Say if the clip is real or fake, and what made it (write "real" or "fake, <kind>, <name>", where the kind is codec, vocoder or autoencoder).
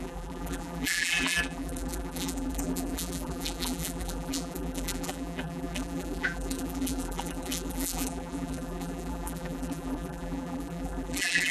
fake, vocoder, BigVGAN v2